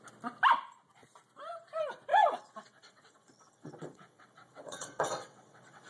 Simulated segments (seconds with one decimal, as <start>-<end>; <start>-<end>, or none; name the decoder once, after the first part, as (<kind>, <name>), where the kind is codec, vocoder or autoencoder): 2.1-5.9 (vocoder, WaveNeXt)